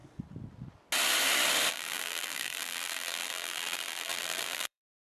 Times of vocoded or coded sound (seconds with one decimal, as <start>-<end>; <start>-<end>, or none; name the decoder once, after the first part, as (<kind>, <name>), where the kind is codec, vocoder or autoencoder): 1.7-5.0 (vocoder, BigVGAN v2)